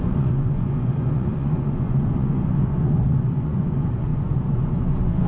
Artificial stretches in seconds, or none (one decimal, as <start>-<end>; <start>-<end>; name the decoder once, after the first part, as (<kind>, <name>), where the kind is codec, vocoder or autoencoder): 0.0-5.3 (vocoder, Vocos)